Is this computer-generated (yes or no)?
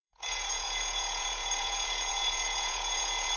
yes